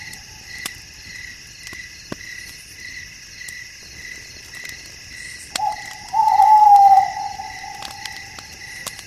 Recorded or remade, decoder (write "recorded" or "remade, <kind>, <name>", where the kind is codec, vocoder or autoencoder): recorded